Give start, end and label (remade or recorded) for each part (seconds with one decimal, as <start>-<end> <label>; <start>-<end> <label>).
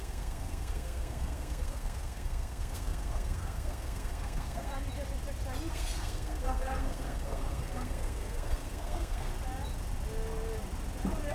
0.0-4.7 remade; 4.7-5.7 recorded; 5.7-9.3 remade; 9.3-11.3 recorded